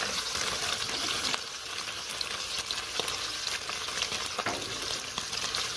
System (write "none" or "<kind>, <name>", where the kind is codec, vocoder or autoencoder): none